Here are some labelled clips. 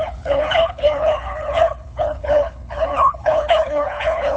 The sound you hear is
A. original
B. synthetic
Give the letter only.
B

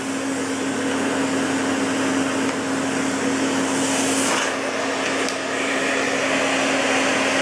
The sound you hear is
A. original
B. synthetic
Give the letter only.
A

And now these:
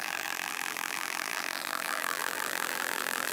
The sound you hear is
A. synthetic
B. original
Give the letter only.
A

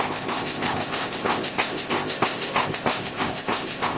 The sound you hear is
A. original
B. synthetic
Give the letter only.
B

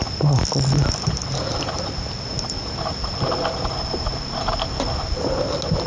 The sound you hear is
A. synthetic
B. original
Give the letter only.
B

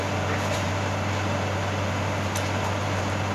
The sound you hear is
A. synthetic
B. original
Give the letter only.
A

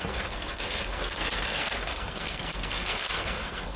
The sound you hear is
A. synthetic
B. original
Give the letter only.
A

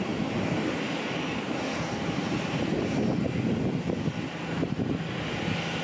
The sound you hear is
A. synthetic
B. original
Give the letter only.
B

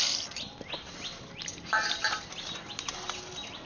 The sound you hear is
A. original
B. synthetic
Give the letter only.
A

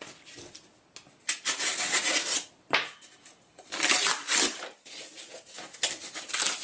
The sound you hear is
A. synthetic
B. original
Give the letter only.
B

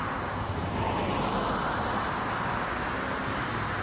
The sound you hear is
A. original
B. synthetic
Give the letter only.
A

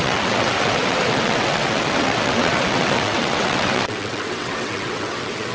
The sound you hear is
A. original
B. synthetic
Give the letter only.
B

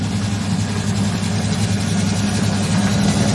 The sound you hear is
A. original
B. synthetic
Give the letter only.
A